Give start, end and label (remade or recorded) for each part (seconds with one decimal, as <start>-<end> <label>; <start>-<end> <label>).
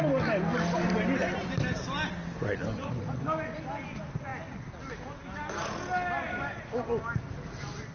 0.0-7.9 recorded